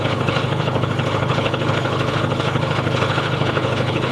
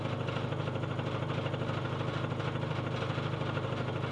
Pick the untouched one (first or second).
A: second